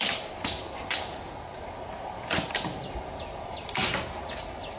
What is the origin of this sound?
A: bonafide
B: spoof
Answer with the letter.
A